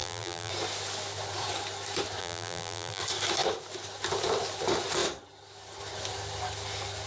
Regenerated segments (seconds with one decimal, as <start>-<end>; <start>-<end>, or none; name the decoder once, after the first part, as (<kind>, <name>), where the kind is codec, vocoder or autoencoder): 0.0-0.5 (vocoder, BigVGAN v2); 2.2-3.0